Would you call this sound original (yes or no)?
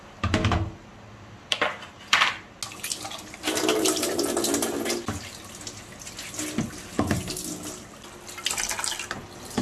yes